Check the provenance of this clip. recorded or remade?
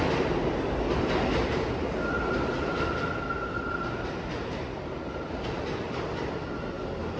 recorded